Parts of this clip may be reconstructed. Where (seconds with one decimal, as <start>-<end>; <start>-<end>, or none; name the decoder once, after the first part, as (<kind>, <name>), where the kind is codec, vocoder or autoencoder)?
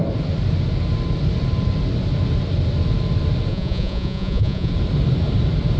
3.5-4.7 (vocoder, Vocos)